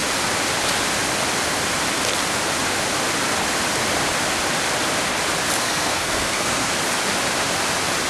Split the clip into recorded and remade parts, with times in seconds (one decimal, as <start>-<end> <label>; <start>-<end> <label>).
0.0-5.6 recorded; 5.6-6.7 remade; 6.7-8.1 recorded